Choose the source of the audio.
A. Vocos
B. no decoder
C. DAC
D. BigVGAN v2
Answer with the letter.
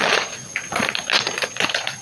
A